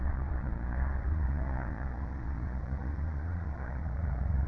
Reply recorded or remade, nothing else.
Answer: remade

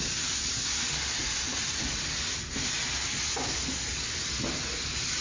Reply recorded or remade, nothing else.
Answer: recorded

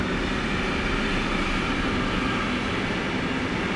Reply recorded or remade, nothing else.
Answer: recorded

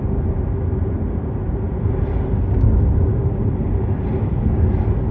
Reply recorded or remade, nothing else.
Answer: recorded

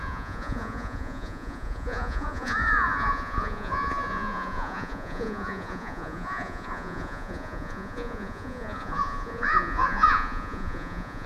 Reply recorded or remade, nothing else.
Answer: remade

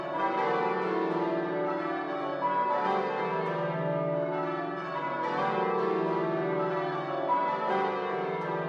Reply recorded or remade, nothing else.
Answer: recorded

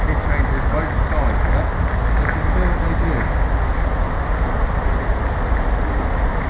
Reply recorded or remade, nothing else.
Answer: recorded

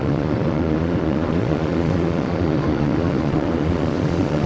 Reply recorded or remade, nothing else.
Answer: remade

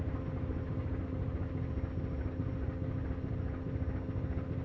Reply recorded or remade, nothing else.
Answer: recorded